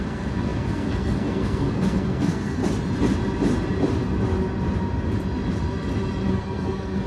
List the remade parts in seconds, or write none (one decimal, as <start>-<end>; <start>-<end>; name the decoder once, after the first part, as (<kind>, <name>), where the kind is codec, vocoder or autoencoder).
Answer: 0.0-2.6 (codec, SNAC); 6.3-7.1